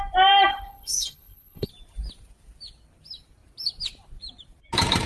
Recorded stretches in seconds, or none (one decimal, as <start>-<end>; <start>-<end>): 0.0-0.5; 1.7-5.1